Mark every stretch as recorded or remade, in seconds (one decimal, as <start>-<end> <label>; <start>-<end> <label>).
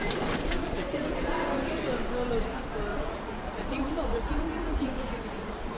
0.0-2.9 recorded; 2.9-5.8 remade